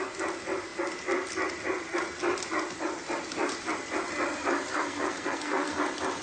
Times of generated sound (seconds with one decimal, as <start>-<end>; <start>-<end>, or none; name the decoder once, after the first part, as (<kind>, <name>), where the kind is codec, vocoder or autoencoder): 4.7-5.8 (codec, SNAC)